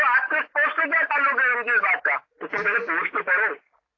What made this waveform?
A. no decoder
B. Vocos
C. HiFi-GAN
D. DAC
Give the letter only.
A